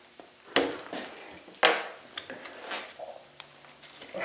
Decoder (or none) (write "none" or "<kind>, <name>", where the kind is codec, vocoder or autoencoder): none